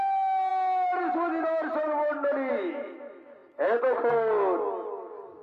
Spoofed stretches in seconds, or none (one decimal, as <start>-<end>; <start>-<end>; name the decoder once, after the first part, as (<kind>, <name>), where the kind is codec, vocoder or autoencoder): none